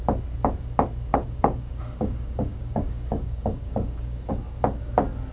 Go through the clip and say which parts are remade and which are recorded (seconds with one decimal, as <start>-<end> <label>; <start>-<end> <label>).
0.0-1.1 recorded; 1.1-4.3 remade; 4.3-5.3 recorded